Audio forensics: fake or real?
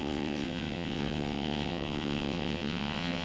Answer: fake